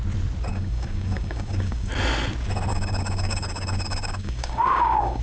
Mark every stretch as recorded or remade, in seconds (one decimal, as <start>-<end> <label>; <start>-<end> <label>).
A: 0.0-0.5 recorded; 0.5-1.9 remade; 1.9-2.7 recorded; 2.7-5.2 remade